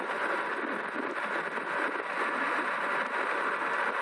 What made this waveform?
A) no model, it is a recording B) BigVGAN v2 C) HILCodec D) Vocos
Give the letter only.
A